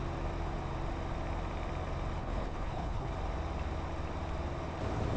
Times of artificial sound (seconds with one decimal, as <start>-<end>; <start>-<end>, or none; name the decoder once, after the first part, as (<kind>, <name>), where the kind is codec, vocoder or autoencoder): 2.2-3.1 (codec, HILCodec)